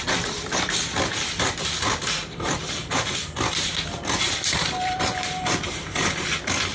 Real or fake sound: fake